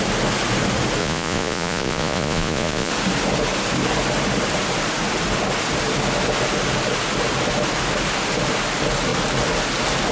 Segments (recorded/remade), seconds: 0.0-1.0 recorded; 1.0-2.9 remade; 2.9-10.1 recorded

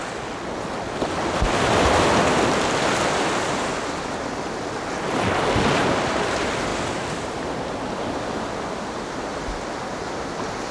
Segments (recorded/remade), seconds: 0.0-10.7 recorded

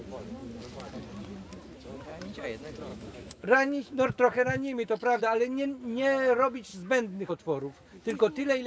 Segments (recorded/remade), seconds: 0.0-2.9 recorded; 2.9-5.2 remade; 5.2-6.7 recorded; 6.7-7.3 remade; 7.3-8.7 recorded

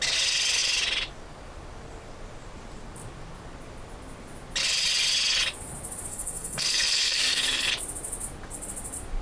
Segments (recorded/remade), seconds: 0.0-6.1 recorded; 6.1-7.7 remade; 7.7-9.2 recorded